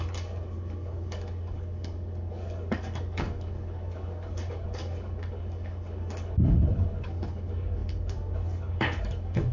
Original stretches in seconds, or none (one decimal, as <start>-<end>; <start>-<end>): none